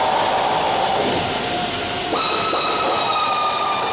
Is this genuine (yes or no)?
yes